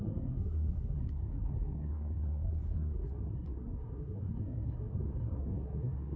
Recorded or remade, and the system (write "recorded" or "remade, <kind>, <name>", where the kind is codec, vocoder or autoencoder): remade, codec, SNAC